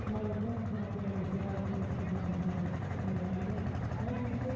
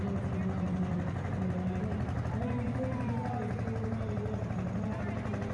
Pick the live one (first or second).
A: second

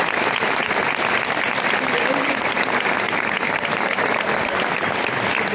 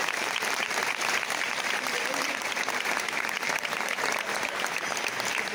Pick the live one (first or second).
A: first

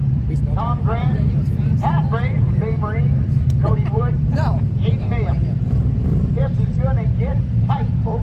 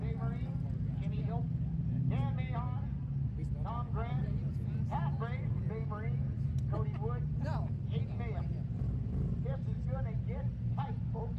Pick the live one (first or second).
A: second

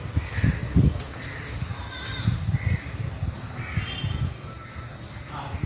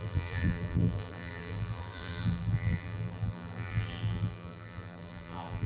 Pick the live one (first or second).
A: first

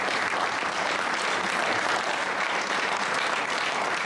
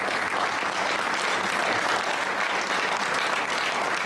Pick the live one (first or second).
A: second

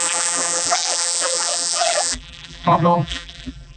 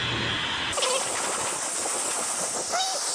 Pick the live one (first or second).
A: second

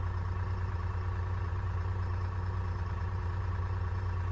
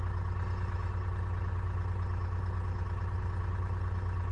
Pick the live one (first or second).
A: second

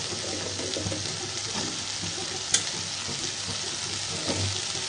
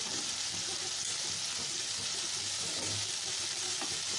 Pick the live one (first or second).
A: first